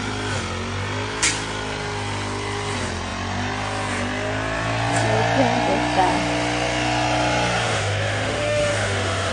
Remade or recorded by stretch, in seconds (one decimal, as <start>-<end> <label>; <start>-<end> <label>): 0.0-7.6 recorded; 7.6-9.3 remade